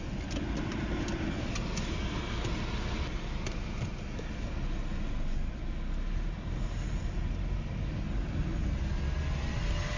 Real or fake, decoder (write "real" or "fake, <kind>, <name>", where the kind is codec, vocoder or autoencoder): real